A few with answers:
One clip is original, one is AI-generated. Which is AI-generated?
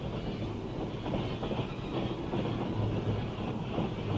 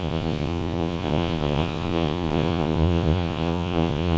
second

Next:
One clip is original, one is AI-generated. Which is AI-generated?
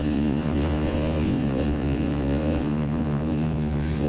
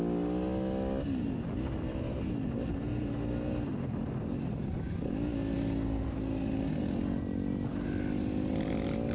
first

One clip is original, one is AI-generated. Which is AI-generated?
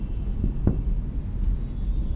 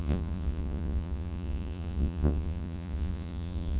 second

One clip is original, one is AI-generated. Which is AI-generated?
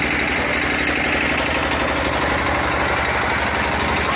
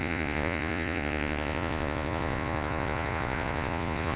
second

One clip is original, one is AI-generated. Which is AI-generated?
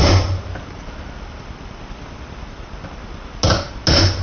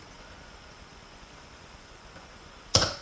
second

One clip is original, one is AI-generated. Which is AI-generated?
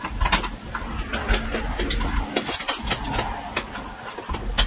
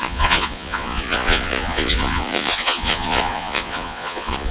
second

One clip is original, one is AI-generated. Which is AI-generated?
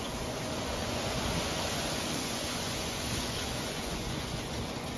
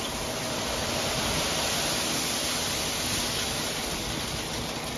first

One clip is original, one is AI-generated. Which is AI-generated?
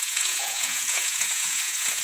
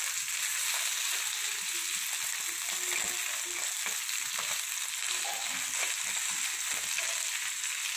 first